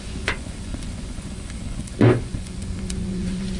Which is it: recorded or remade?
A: remade